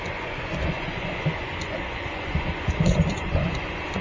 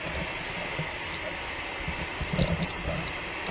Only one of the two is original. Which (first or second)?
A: second